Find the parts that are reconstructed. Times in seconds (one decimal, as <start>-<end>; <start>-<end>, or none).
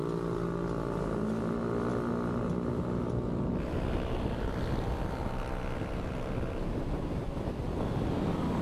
none